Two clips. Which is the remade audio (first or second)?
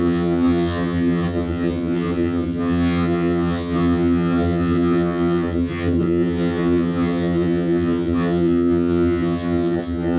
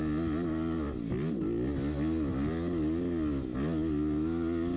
first